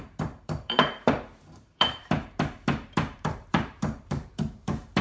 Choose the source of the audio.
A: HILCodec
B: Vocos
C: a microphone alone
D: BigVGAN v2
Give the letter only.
D